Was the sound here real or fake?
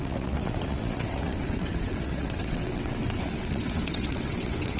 fake